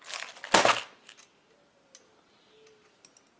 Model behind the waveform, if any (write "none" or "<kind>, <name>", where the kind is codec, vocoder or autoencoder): none